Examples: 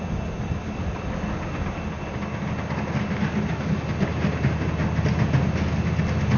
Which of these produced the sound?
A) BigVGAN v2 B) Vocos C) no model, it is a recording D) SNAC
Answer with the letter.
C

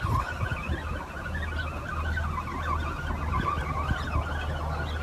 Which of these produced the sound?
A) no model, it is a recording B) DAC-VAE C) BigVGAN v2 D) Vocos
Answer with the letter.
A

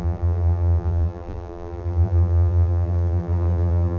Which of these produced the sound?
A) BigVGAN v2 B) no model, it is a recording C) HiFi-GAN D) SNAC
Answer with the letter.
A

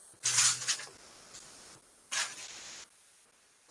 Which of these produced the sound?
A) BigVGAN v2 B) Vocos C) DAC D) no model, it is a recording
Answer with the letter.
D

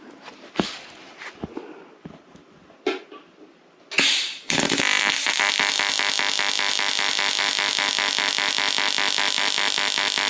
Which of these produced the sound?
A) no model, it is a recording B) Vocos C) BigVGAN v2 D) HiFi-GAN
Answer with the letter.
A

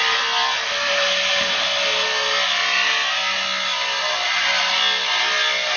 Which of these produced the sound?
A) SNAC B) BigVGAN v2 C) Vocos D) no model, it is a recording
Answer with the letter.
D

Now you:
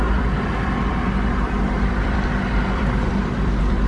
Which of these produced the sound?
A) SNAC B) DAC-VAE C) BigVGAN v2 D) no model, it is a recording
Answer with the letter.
C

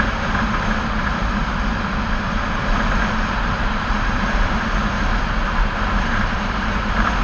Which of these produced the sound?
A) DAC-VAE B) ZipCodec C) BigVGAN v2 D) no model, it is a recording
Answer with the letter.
C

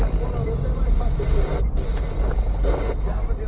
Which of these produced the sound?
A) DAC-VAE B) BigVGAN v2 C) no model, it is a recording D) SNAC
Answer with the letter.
C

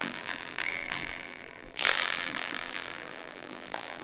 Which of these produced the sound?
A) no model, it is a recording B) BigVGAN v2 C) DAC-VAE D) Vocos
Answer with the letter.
B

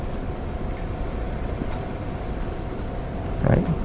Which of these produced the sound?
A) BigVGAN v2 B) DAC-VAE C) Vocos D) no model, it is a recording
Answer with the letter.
A